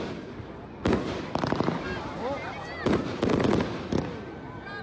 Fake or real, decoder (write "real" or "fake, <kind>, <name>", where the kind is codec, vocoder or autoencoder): real